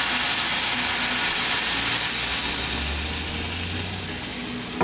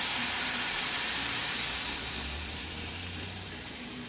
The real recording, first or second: first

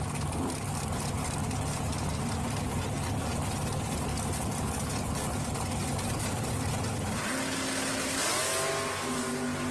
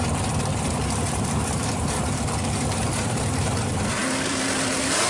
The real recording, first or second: first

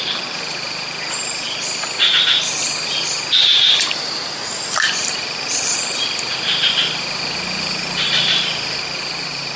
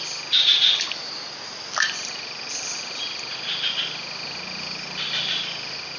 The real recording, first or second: second